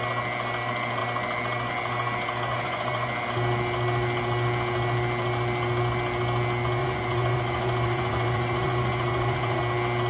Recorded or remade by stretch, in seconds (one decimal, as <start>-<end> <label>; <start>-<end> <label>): 0.0-2.5 recorded; 2.5-3.1 remade; 3.1-6.8 recorded; 6.8-9.6 remade; 9.6-10.1 recorded